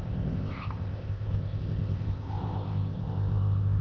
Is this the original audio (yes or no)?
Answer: no